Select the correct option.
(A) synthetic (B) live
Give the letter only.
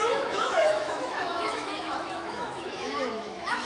A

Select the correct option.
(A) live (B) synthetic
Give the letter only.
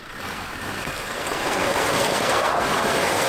B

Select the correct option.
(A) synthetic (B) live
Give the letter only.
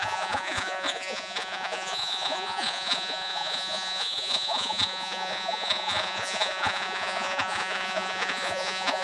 A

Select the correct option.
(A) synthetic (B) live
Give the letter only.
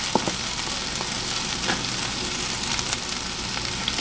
B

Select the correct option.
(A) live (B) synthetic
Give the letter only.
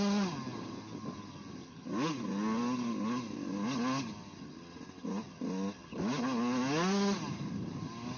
A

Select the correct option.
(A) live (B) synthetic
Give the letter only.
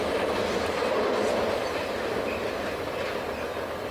A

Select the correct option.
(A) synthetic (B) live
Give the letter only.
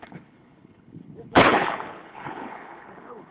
A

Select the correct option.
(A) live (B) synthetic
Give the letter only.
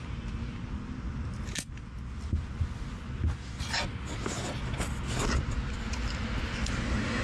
A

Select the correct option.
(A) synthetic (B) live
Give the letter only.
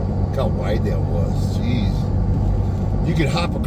B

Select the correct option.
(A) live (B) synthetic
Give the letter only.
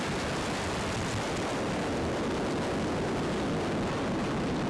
A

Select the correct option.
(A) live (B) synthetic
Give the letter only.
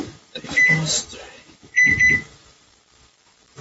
B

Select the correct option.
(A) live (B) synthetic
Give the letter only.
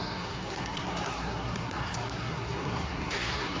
B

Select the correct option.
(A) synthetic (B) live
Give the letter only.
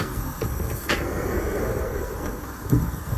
A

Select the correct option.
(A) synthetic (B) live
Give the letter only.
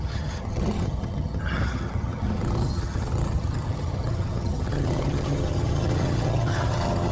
A